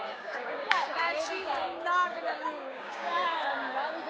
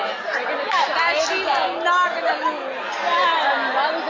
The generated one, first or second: first